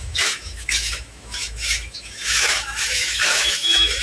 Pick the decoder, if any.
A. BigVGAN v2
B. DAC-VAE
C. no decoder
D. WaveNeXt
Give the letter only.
B